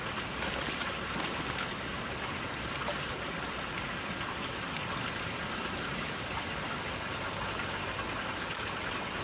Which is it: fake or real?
real